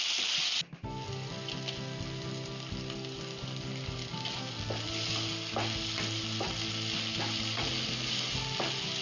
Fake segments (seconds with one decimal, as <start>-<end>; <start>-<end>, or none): none

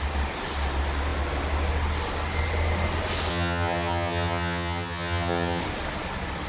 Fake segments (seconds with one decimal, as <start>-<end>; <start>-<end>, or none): 3.3-5.6